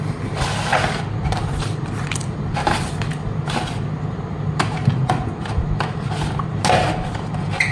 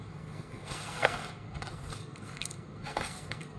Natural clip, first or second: first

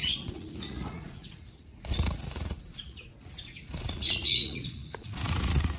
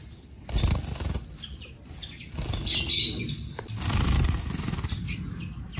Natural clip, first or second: second